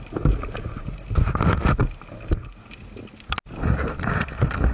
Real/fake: real